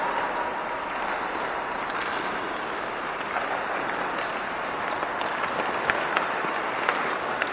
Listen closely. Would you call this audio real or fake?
fake